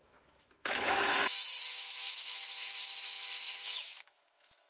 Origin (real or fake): fake